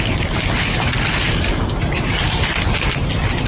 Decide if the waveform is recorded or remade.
recorded